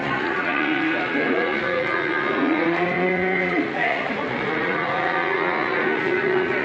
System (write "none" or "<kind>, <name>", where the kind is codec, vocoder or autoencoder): vocoder, Vocos